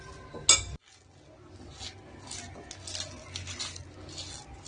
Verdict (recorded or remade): recorded